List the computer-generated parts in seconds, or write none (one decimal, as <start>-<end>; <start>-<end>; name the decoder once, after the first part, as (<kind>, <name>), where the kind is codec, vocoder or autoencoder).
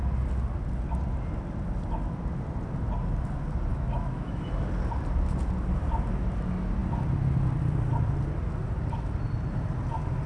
3.7-4.5 (autoencoder, DAC-VAE)